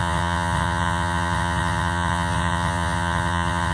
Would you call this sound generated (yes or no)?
yes